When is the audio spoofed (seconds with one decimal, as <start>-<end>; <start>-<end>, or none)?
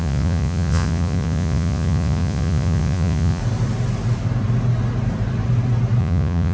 0.0-3.4; 6.0-6.5